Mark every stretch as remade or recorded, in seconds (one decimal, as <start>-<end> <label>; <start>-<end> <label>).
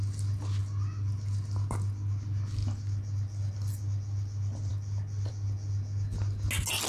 0.0-6.9 recorded